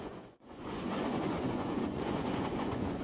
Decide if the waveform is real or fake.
fake